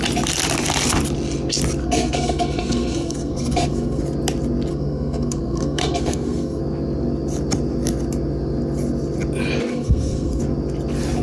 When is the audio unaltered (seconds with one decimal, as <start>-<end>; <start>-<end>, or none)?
0.0-1.8; 4.0-4.7; 6.6-9.7; 10.4-11.2